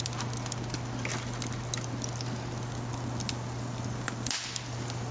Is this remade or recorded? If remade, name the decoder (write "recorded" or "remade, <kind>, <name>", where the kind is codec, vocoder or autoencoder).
recorded